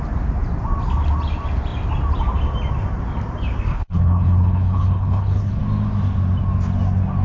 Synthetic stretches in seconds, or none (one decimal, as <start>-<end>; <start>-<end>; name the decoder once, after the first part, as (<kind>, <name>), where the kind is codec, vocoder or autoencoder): 3.7-5.6 (codec, HILCodec)